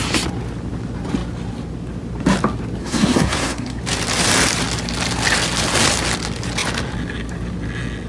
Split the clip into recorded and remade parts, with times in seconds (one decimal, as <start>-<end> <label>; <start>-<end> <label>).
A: 0.0-2.8 recorded; 2.8-3.8 remade; 3.8-8.1 recorded